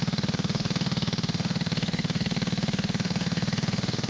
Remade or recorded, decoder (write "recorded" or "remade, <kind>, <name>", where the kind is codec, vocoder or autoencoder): remade, autoencoder, DAC-VAE